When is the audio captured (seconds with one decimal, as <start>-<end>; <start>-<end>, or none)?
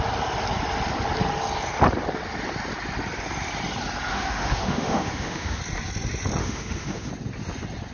0.0-4.1; 5.6-6.4; 7.1-7.9